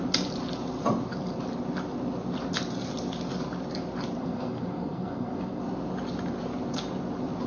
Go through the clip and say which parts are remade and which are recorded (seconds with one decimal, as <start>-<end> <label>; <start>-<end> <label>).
0.0-4.2 recorded; 4.2-5.6 remade; 5.6-7.5 recorded